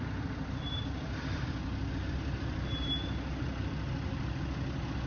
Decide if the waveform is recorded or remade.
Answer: recorded